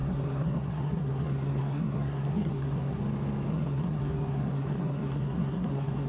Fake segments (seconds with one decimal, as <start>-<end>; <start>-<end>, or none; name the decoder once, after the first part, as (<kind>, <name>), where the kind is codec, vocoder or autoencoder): 0.0-3.0 (codec, SNAC); 3.5-6.1